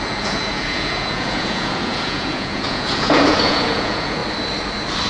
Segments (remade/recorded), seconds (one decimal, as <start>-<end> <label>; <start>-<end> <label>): 0.0-4.2 remade; 4.2-5.1 recorded